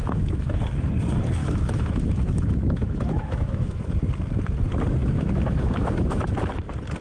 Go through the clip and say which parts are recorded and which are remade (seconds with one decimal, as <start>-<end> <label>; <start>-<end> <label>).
0.0-0.6 remade; 0.6-1.4 recorded; 1.4-3.8 remade; 3.8-5.0 recorded; 5.0-6.2 remade; 6.2-7.0 recorded